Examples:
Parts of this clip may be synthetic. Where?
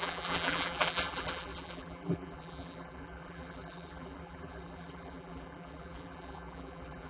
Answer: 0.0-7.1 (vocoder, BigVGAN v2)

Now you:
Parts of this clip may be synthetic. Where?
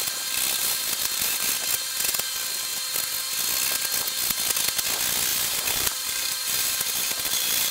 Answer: 0.6-1.5 (vocoder, BigVGAN v2); 5.3-7.7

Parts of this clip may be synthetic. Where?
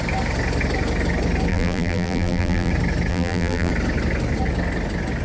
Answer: 1.5-2.7 (vocoder, BigVGAN v2); 3.1-3.7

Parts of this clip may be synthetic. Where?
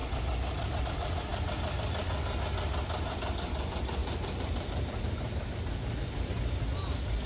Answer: 0.0-0.8 (vocoder, BigVGAN v2); 4.0-6.3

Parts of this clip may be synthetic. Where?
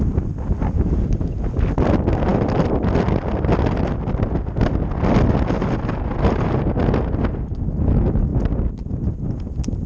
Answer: none